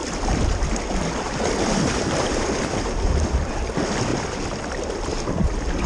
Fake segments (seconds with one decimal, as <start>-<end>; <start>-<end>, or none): 0.0-3.5; 4.1-4.9